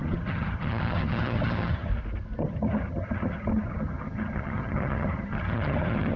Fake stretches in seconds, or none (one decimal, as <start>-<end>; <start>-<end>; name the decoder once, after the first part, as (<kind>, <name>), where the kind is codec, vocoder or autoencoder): 0.0-1.9 (vocoder, HiFi-GAN); 2.4-6.2